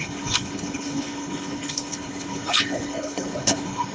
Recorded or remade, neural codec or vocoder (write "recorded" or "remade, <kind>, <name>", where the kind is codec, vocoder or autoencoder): remade, codec, HILCodec